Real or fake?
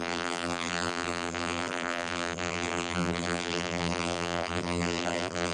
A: fake